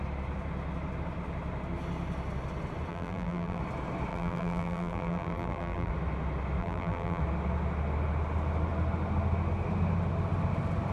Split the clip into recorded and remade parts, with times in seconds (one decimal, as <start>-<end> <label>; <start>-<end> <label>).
0.0-2.9 recorded; 2.9-3.6 remade; 3.6-4.1 recorded; 4.1-5.9 remade; 5.9-6.6 recorded; 6.6-7.2 remade; 7.2-10.9 recorded